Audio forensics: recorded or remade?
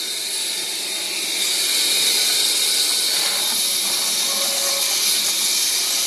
recorded